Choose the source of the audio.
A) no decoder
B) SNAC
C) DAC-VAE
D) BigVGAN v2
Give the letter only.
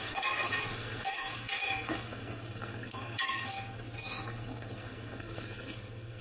B